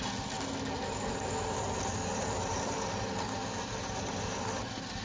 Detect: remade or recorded recorded